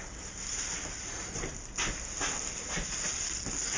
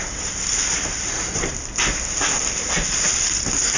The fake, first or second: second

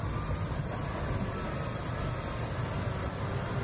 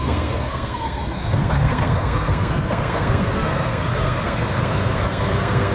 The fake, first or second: second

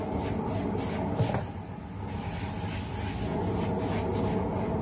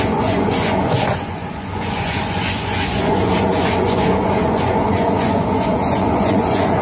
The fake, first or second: second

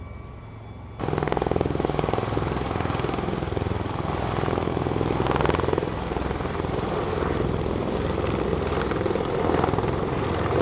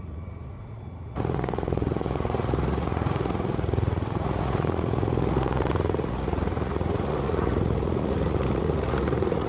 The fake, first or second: second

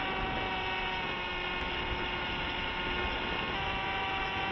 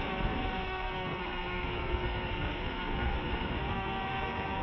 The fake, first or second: second